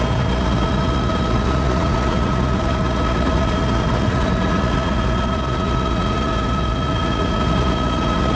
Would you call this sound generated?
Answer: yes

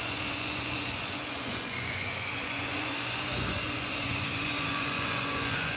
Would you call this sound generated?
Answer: yes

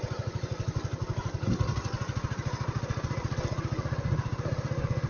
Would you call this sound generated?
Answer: no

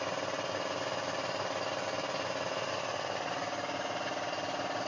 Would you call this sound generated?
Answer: no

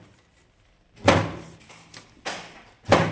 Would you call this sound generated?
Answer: no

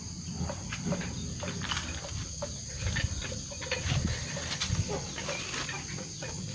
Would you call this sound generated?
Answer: no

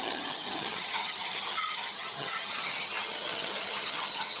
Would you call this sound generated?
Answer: yes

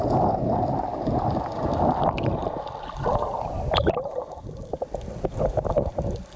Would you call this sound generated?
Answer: no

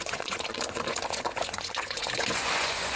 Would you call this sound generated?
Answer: yes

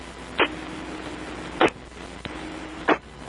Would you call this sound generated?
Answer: no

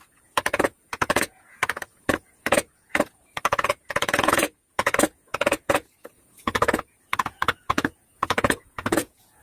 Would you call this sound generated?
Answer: yes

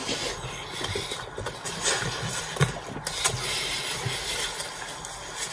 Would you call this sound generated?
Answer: no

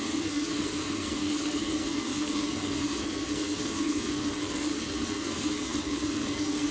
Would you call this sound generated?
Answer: yes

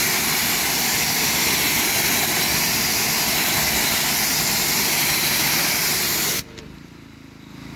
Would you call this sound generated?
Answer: no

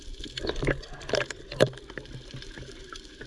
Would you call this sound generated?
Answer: no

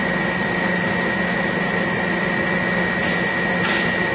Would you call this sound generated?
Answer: no